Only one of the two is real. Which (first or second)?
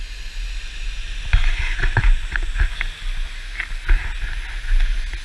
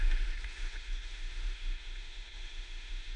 first